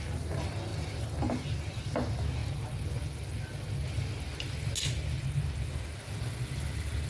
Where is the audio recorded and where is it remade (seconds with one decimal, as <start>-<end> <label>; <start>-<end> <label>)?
0.0-7.1 recorded